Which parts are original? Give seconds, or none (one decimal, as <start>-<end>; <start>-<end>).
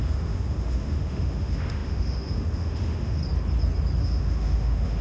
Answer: 3.2-4.0